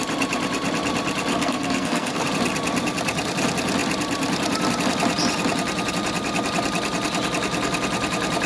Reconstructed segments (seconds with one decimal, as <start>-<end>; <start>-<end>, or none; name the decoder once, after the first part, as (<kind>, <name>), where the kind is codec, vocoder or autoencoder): 1.3-2.3 (codec, SNAC)